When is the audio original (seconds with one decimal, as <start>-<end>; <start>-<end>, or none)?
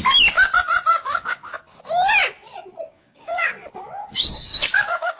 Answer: 0.0-0.9; 1.5-2.9; 3.5-4.0